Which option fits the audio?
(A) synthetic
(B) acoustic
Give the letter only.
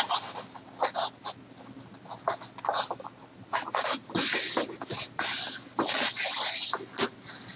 B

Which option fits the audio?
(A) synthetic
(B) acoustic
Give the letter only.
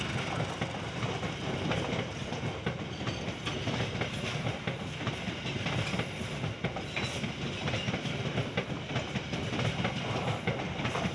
B